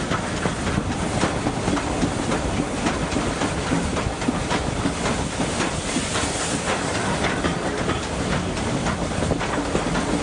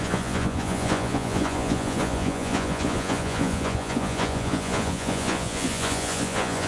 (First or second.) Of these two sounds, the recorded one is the first